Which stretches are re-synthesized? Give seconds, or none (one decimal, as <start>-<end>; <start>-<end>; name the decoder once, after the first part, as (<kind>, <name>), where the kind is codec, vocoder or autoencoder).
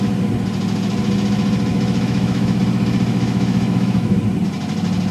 1.7-2.6 (autoencoder, DAC-VAE); 3.1-4.2